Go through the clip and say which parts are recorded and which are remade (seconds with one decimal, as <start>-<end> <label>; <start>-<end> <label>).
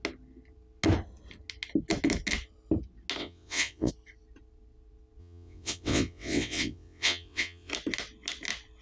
0.0-3.2 recorded; 3.2-3.9 remade; 3.9-5.2 recorded; 5.2-7.7 remade; 7.7-8.8 recorded